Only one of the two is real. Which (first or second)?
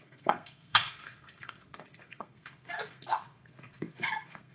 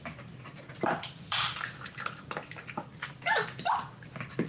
second